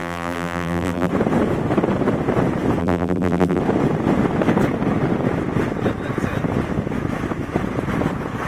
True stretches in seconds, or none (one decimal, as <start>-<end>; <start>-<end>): 1.1-2.8; 3.6-8.5